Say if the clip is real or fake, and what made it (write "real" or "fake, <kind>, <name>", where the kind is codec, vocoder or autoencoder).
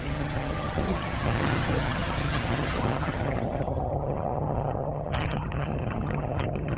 fake, vocoder, HiFi-GAN